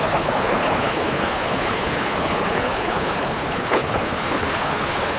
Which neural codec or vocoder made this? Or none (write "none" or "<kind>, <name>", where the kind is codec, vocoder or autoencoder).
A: codec, HILCodec